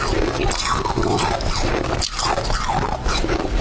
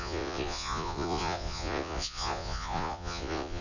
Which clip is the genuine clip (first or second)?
first